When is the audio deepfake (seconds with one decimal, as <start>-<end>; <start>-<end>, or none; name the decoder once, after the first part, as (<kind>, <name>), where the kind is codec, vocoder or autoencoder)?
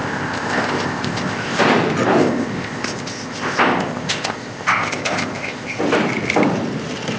0.0-1.6 (codec, ZipCodec); 2.2-5.8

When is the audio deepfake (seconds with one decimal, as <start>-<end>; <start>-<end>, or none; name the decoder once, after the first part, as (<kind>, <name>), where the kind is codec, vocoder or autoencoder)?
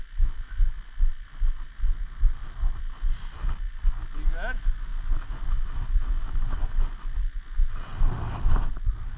none